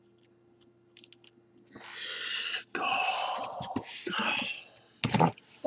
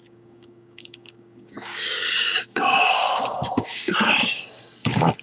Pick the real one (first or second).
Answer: first